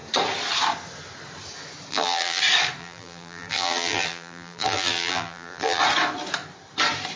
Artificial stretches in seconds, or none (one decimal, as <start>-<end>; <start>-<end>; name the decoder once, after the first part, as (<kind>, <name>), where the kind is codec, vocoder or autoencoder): 1.9-2.4 (vocoder, BigVGAN v2); 2.8-5.8